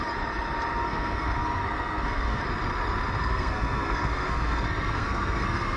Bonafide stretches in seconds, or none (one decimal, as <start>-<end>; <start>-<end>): 0.0-0.7; 2.4-3.2